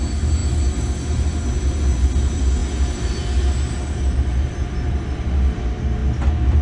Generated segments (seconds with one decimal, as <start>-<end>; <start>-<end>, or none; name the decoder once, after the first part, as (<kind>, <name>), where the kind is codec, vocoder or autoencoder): none